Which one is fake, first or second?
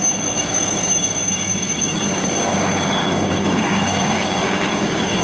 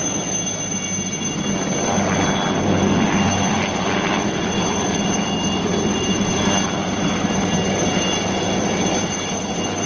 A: first